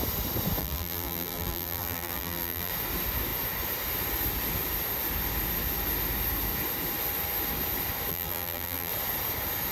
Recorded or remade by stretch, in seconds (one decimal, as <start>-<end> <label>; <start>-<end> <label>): 0.0-0.6 recorded; 0.6-2.7 remade; 2.7-8.1 recorded; 8.1-8.9 remade; 8.9-9.7 recorded